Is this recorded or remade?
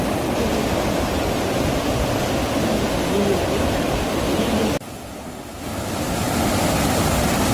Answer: recorded